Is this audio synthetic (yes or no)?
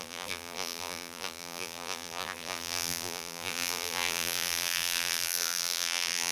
yes